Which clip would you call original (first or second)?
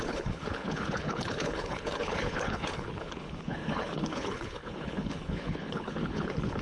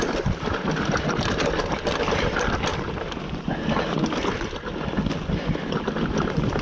second